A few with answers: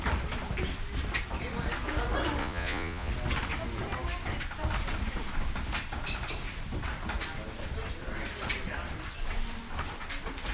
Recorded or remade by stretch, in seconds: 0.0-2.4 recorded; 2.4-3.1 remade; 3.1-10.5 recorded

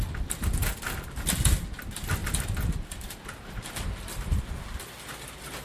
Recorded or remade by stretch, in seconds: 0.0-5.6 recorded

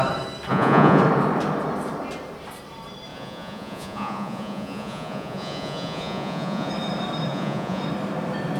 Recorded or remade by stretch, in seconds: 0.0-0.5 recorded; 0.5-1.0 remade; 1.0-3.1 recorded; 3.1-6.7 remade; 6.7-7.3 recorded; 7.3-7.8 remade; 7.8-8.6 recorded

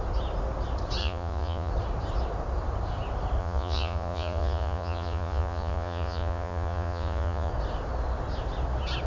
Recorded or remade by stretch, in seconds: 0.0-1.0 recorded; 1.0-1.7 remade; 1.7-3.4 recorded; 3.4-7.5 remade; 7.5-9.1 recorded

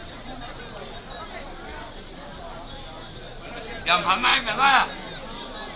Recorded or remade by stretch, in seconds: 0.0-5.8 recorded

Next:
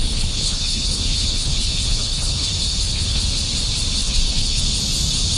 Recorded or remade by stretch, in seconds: 0.0-3.2 remade; 3.2-4.0 recorded; 4.0-4.6 remade; 4.6-5.4 recorded

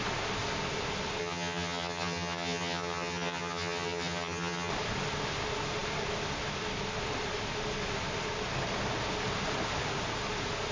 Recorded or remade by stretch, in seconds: 0.0-1.2 recorded; 1.2-4.7 remade; 4.7-10.7 recorded